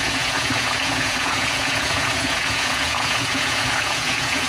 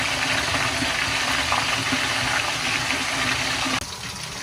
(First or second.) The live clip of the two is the second